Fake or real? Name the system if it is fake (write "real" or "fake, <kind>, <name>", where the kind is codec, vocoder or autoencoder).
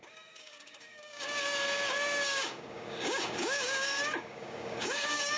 fake, codec, DAC